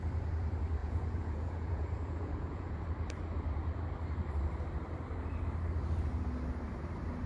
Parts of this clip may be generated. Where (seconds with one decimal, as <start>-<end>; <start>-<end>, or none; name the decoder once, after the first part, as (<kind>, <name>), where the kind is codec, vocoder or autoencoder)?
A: 0.8-2.8 (vocoder, Vocos)